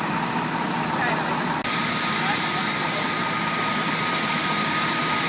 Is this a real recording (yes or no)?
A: yes